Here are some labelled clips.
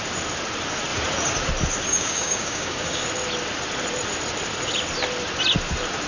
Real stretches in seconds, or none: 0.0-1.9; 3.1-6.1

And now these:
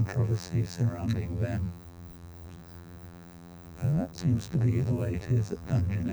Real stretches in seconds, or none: none

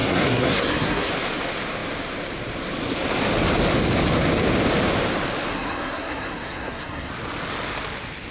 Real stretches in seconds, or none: 1.1-5.5; 7.1-8.3

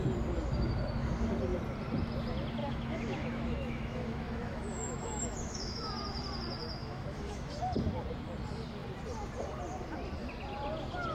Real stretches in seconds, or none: 0.0-2.6; 5.9-6.6; 7.6-11.1